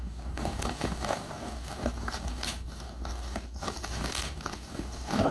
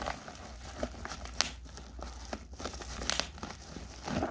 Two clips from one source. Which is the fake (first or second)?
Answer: first